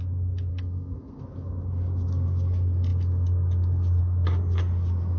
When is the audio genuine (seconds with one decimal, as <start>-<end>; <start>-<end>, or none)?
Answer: 0.0-0.5; 1.2-5.2